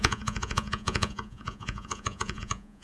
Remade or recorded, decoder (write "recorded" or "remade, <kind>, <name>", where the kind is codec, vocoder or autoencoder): remade, vocoder, Vocos